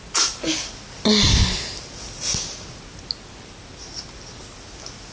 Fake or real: real